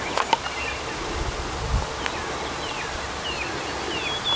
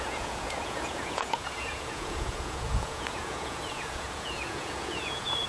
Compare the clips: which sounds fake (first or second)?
second